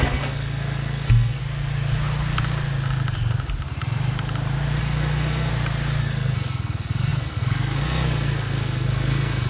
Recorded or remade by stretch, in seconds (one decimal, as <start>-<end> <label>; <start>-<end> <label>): 0.0-1.4 remade; 1.4-4.8 recorded; 4.8-5.5 remade; 5.5-6.0 recorded; 6.0-9.5 remade